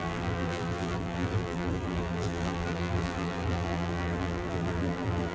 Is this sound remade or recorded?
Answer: remade